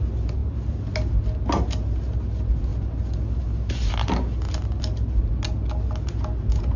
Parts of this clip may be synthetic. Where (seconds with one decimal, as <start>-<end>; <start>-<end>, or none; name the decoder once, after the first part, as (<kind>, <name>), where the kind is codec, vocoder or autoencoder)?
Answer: none